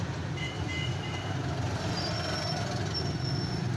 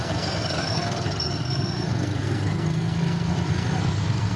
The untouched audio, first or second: first